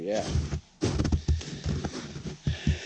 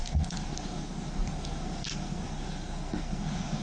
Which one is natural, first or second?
first